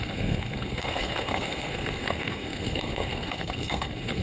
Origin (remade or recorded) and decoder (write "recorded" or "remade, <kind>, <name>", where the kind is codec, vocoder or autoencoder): remade, codec, SNAC